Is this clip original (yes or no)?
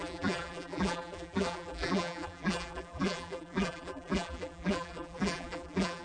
no